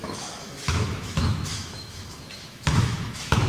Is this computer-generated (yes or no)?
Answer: yes